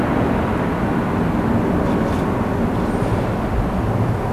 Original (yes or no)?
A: yes